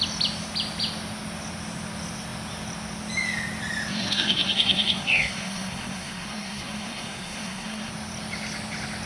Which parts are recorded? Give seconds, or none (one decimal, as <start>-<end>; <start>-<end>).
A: 0.0-3.9; 7.9-9.1